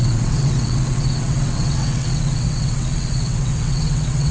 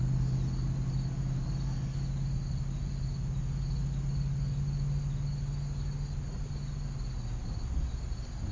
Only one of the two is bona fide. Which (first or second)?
second